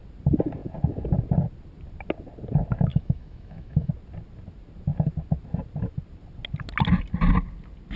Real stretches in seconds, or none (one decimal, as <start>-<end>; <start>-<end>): 0.0-2.9; 3.9-8.0